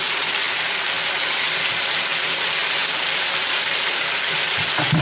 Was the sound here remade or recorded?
recorded